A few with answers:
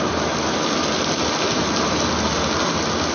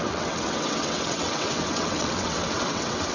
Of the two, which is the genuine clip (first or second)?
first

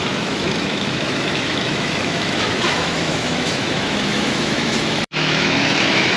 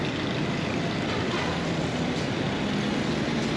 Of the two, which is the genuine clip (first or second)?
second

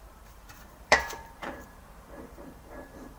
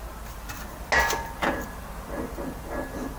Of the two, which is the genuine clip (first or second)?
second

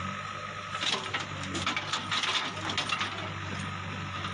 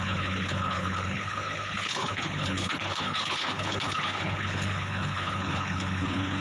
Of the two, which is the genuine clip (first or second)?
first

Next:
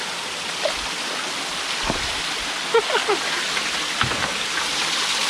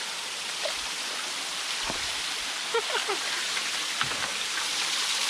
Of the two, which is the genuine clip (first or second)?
first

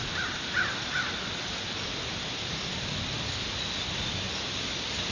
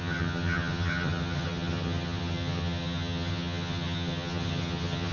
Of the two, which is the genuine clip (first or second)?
first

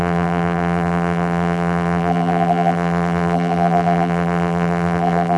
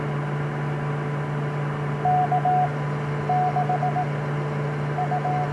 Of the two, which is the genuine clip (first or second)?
second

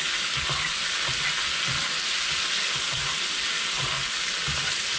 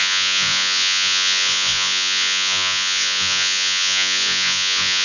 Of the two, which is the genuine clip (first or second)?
first